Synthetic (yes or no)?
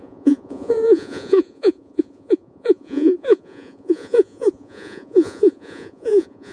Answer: yes